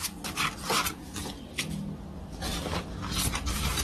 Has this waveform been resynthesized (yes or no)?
no